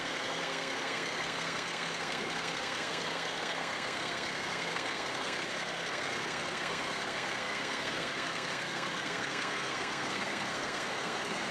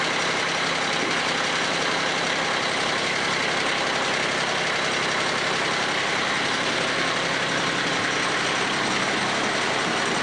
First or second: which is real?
second